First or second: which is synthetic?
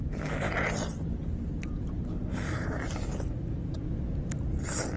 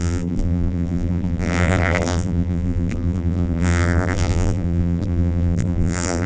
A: second